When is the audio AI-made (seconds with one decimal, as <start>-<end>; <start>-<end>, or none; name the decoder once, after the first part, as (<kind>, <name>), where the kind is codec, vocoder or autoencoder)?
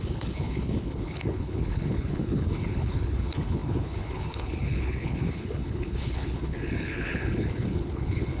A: 0.0-8.4 (codec, HILCodec)